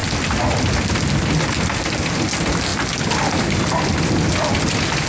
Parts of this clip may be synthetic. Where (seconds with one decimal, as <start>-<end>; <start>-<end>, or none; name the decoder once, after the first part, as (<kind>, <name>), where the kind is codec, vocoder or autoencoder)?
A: none